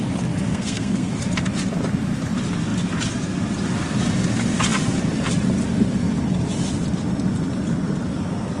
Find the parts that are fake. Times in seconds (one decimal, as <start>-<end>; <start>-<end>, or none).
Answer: 0.5-1.1